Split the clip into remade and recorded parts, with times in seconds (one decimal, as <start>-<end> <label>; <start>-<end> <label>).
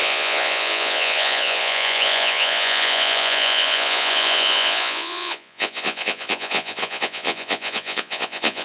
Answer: 0.0-8.6 remade